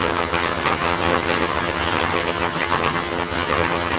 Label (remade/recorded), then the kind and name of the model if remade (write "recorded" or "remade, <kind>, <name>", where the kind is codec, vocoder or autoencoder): remade, vocoder, HiFi-GAN